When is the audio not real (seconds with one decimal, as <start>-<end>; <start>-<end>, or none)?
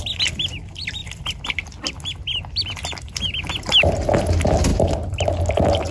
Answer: none